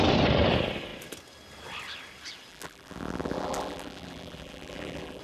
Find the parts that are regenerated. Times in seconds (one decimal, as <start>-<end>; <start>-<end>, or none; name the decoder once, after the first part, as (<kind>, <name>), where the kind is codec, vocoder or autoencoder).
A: 2.5-5.2 (vocoder, BigVGAN v2)